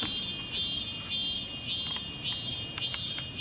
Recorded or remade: recorded